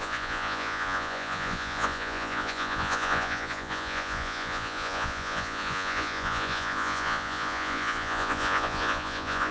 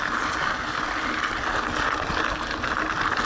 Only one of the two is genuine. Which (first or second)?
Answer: second